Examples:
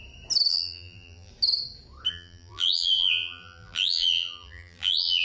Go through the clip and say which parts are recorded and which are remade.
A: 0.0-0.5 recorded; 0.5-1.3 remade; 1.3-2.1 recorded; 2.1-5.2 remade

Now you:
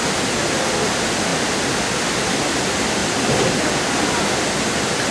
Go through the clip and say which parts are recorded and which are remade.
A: 0.0-1.3 recorded; 1.3-1.9 remade; 1.9-5.1 recorded

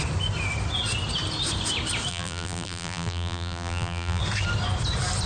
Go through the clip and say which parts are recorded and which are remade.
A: 0.0-2.1 recorded; 2.1-4.2 remade; 4.2-5.3 recorded

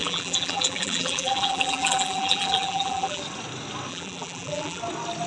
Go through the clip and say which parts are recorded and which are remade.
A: 0.0-3.2 remade; 3.2-3.9 recorded; 3.9-4.8 remade; 4.8-5.3 recorded

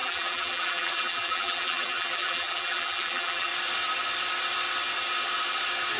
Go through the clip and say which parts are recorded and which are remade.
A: 0.0-3.5 remade; 3.5-6.0 recorded

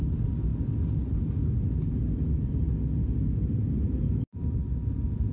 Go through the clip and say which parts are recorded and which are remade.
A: 0.0-0.5 remade; 0.5-1.9 recorded; 1.9-2.7 remade; 2.7-5.3 recorded

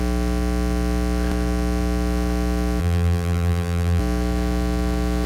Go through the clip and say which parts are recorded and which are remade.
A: 0.0-2.8 recorded; 2.8-4.0 remade; 4.0-5.3 recorded

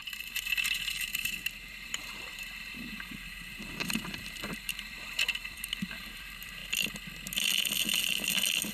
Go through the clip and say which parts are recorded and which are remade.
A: 0.0-6.6 remade; 6.6-8.7 recorded